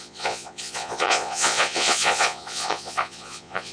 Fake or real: fake